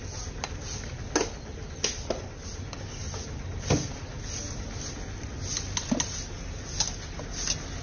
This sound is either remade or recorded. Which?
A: recorded